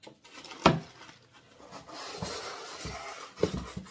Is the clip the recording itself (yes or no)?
yes